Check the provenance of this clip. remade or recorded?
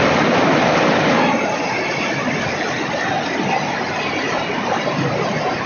recorded